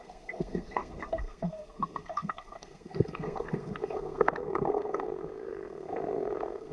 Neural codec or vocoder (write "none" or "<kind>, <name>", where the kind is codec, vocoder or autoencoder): codec, SNAC